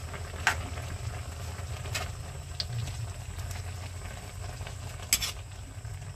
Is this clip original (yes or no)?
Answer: yes